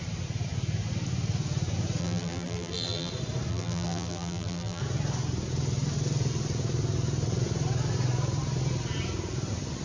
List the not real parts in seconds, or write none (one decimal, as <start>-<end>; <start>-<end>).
2.0-3.1; 3.5-4.8

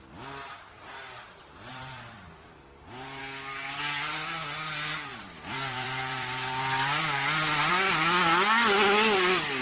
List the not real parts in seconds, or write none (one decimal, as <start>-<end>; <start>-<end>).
1.7-3.2; 5.1-7.7